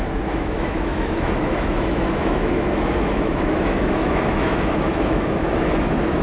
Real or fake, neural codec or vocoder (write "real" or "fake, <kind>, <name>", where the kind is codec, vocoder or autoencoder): fake, autoencoder, DAC-VAE